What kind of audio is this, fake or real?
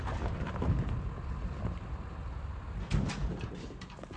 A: real